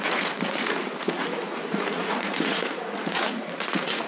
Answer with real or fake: fake